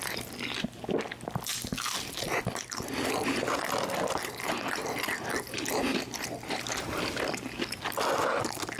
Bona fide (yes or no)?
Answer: yes